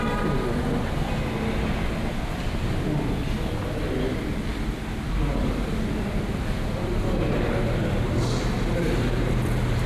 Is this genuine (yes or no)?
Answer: yes